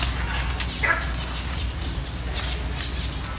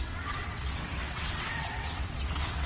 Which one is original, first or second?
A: first